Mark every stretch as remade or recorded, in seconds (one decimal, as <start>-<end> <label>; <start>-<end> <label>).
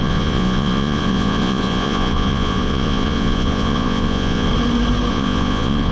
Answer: 0.0-4.5 remade; 4.5-5.1 recorded; 5.1-5.9 remade